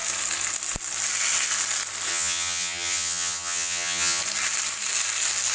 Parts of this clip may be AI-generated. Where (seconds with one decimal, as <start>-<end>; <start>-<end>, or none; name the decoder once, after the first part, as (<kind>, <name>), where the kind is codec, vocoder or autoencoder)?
2.1-4.2 (vocoder, HiFi-GAN)